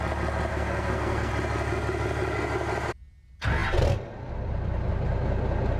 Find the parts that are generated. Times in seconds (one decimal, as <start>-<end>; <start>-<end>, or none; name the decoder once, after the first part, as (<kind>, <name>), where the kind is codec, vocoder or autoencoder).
0.5-1.3 (codec, SNAC)